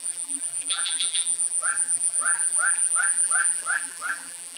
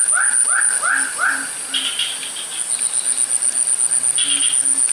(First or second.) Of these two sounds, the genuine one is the second